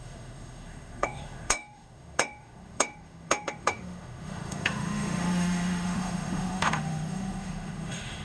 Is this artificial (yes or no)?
yes